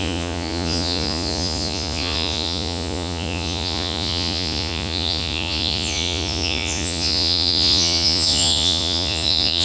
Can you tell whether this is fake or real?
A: fake